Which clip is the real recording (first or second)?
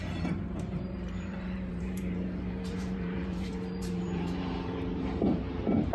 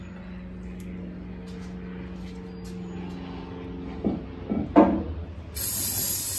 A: second